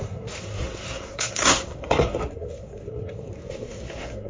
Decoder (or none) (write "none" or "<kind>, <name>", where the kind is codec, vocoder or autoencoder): codec, SNAC